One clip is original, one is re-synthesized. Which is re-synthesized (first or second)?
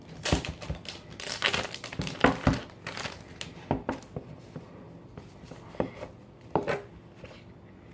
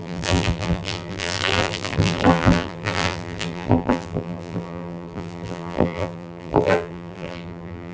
second